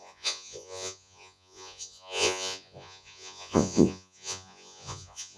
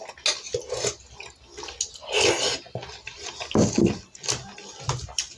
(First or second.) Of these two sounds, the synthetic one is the first